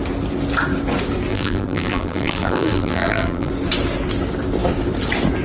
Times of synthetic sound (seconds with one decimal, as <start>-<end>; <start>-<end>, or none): 1.3-3.5